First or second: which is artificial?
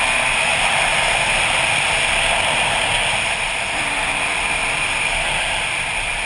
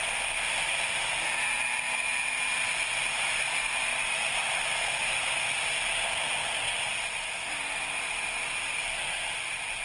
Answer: first